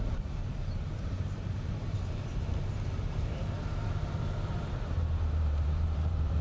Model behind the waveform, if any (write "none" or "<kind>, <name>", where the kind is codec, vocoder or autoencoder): vocoder, BigVGAN v2